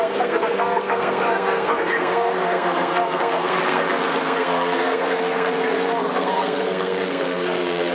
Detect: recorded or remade remade